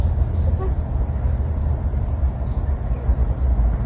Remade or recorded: recorded